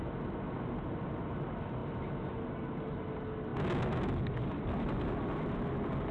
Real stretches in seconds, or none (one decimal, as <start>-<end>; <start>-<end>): 0.0-6.1